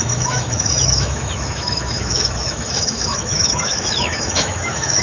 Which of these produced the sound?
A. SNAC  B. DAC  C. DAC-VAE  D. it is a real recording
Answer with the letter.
C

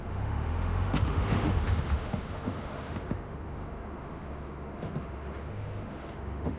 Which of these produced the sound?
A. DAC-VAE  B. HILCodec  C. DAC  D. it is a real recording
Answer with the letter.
A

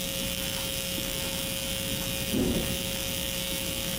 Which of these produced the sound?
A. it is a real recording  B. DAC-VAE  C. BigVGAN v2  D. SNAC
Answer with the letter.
B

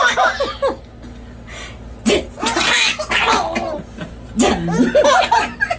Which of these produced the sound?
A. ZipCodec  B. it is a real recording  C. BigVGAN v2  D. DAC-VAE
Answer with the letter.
B